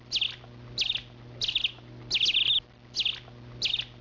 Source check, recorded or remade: recorded